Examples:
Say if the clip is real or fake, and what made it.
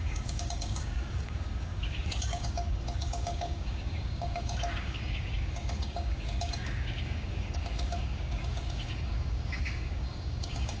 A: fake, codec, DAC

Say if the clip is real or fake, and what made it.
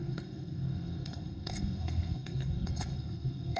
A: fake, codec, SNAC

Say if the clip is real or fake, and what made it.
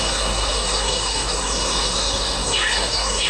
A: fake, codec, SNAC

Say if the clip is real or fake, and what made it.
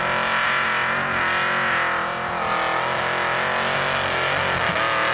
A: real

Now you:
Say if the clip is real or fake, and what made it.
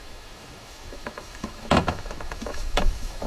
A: fake, autoencoder, DAC-VAE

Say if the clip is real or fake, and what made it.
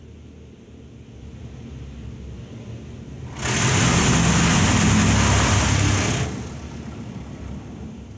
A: real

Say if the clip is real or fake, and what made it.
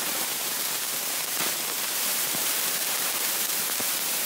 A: fake, vocoder, BigVGAN v2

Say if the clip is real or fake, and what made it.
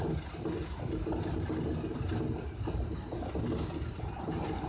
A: real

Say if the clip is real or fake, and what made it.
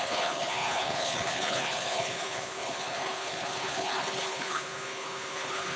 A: fake, codec, HILCodec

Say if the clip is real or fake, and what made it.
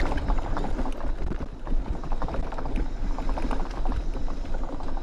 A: real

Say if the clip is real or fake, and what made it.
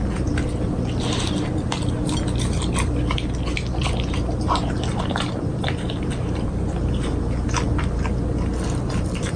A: real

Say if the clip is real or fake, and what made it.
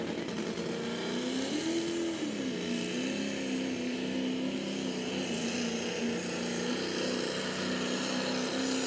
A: real